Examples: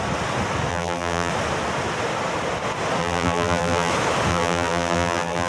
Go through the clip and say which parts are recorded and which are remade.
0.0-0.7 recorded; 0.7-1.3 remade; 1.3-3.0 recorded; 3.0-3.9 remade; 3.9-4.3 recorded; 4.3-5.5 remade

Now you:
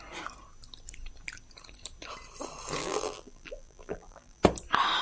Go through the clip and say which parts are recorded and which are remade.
0.0-2.8 recorded; 2.8-4.4 remade; 4.4-5.0 recorded

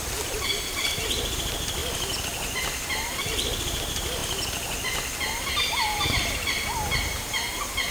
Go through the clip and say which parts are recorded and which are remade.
0.0-1.8 remade; 1.8-2.6 recorded; 2.6-4.2 remade; 4.2-5.4 recorded; 5.4-7.9 remade

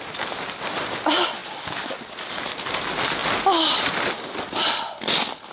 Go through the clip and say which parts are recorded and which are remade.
0.0-1.4 recorded; 1.4-2.7 remade; 2.7-5.5 recorded